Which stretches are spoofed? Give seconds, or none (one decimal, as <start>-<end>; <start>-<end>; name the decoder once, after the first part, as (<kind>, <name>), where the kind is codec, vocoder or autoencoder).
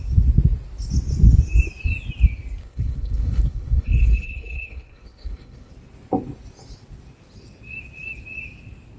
2.6-5.7 (codec, HILCodec)